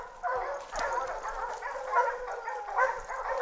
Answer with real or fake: real